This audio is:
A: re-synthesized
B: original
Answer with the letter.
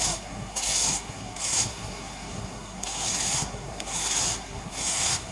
A